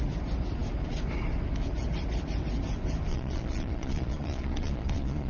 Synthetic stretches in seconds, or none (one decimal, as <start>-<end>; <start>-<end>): 3.1-5.3